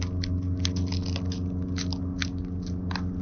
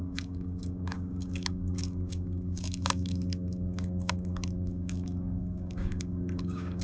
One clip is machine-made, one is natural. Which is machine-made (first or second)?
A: second